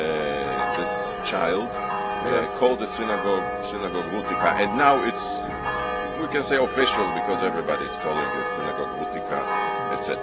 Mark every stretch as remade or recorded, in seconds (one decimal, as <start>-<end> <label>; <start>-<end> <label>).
0.0-1.0 recorded; 1.0-1.9 remade; 1.9-10.2 recorded